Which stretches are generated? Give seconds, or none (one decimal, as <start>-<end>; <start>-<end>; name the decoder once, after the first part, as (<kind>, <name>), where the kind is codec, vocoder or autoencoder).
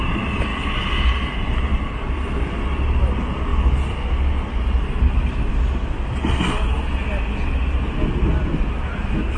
none